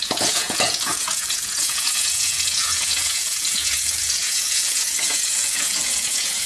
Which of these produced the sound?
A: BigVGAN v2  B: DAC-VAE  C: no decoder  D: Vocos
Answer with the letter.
D